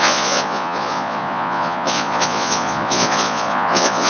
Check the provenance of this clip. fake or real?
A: fake